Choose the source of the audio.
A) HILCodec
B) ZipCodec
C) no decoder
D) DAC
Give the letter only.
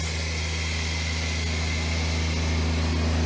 C